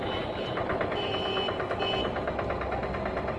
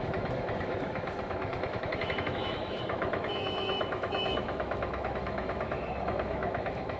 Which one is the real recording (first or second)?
first